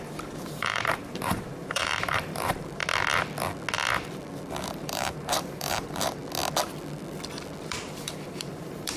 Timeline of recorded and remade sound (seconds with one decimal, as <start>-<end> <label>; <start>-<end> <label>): 0.0-2.8 remade; 2.8-4.7 recorded; 4.7-6.2 remade; 6.2-7.6 recorded; 7.6-9.0 remade